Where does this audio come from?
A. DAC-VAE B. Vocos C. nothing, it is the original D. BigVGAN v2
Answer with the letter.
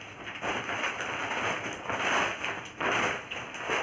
D